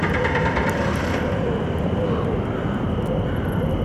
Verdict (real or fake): fake